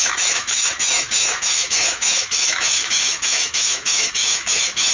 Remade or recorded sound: remade